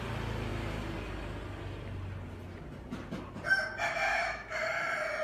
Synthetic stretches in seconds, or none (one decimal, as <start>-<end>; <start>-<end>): 4.1-4.8